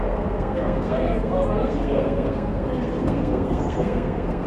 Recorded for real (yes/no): no